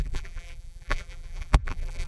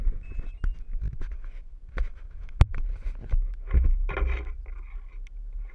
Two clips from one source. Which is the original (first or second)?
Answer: second